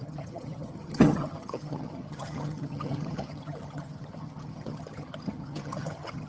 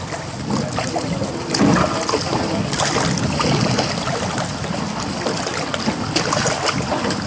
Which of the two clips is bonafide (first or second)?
second